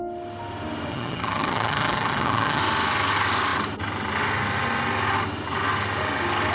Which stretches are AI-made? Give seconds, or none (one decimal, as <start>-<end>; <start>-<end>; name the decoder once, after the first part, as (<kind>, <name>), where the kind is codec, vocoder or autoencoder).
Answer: 0.9-2.6 (vocoder, HiFi-GAN)